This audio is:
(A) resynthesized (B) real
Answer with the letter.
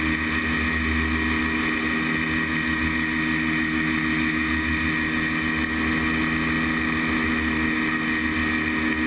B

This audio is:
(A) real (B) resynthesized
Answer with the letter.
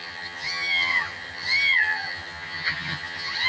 B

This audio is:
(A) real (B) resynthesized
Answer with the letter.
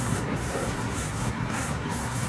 B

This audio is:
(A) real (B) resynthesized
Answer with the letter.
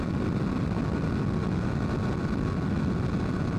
A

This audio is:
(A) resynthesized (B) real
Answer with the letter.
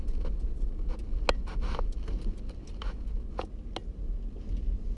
B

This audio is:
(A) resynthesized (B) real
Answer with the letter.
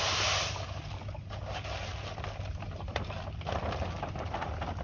B